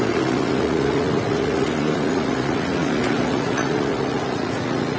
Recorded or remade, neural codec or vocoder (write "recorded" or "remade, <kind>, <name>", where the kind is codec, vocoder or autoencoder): remade, vocoder, Vocos